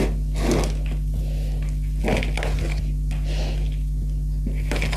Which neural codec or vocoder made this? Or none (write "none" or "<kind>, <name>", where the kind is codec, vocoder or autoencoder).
none